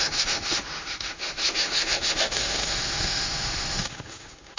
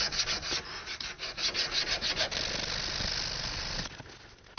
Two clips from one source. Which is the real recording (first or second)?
second